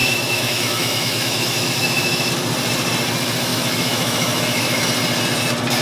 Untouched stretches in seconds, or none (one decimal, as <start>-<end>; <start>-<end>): 2.3-3.5; 4.8-5.8